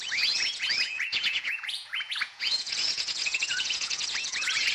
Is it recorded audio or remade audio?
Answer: remade